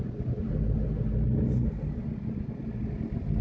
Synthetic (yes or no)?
no